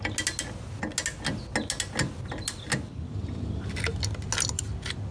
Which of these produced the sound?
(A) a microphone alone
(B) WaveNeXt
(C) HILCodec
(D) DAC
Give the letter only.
A